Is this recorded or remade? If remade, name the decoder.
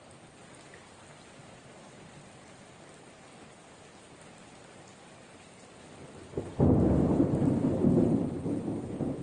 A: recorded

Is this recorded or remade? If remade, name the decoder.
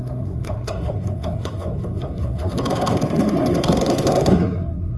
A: remade, codec, SNAC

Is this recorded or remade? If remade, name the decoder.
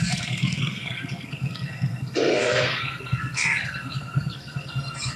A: remade, codec, SNAC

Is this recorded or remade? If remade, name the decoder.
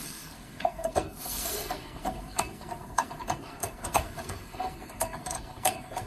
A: remade, codec, SNAC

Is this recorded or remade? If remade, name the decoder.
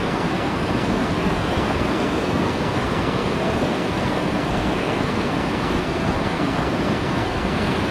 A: remade, codec, SNAC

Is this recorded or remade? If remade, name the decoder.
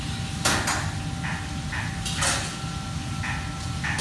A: recorded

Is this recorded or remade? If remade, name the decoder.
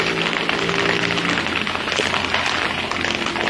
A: recorded